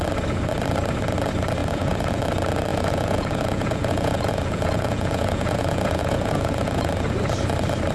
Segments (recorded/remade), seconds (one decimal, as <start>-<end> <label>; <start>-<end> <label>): 0.0-1.6 recorded; 1.6-2.2 remade; 2.2-2.7 recorded; 2.7-6.9 remade; 6.9-7.9 recorded